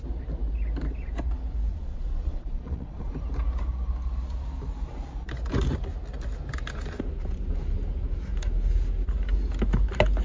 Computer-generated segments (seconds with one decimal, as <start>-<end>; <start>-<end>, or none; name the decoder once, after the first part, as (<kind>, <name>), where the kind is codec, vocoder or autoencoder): 1.7-3.1 (vocoder, Vocos)